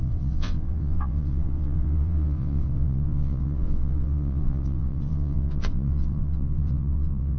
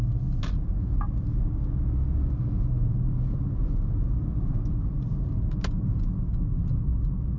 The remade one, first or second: first